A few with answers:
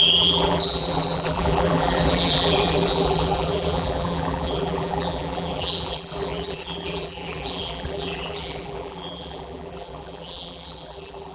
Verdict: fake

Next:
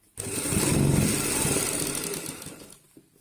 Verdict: real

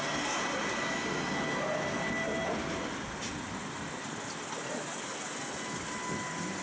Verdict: real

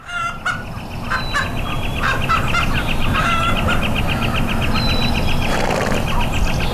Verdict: real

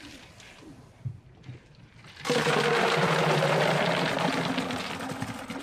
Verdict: real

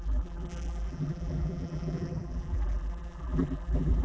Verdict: fake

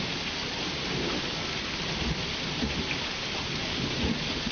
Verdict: real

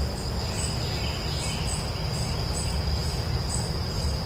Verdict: real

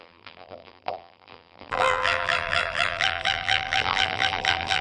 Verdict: fake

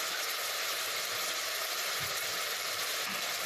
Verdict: fake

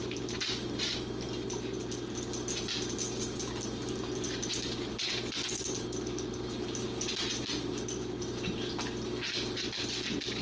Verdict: real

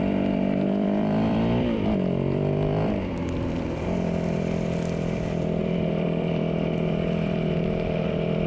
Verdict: fake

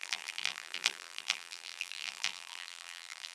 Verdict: fake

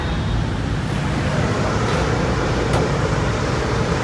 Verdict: fake